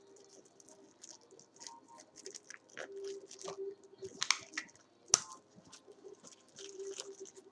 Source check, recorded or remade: recorded